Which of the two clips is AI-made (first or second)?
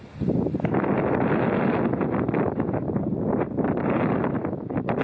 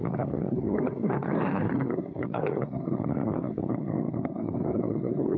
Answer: second